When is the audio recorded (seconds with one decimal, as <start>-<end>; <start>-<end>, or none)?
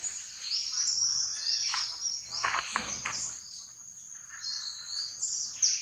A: 0.0-5.8